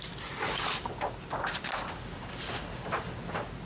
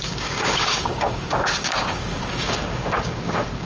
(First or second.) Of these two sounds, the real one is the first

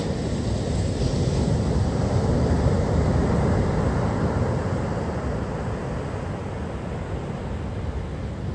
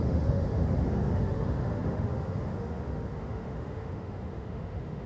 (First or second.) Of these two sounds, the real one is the first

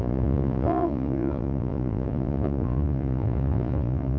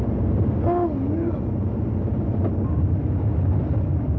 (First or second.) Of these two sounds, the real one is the second